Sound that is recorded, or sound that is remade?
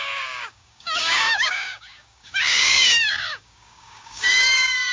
remade